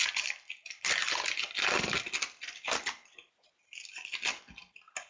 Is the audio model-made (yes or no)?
no